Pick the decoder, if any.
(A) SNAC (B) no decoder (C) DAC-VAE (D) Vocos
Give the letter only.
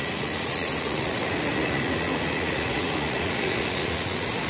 D